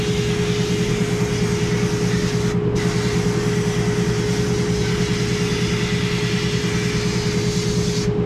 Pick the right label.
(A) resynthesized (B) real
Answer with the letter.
B